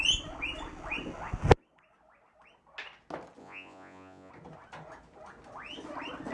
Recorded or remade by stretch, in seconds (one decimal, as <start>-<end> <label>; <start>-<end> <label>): 0.0-3.4 recorded; 3.4-4.3 remade; 4.3-6.3 recorded